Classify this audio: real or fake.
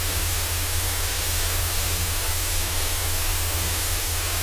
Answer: fake